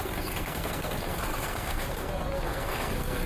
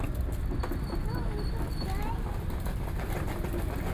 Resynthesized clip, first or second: first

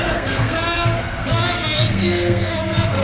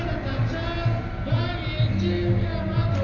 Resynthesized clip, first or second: first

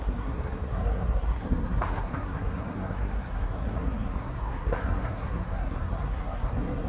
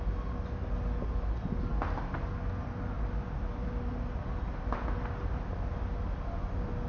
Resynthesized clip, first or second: first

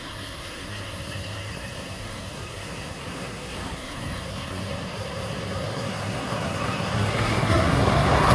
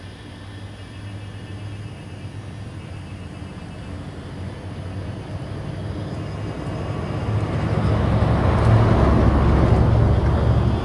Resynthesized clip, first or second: first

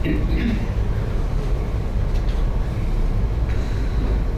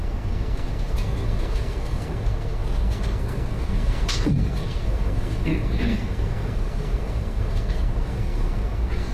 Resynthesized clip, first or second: second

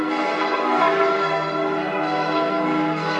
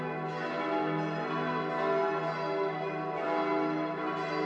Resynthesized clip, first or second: first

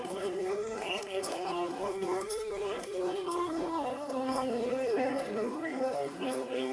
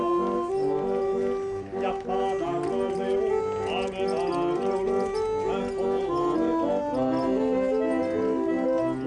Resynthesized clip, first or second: first